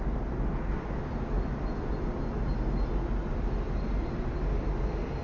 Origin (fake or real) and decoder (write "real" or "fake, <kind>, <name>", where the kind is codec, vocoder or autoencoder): real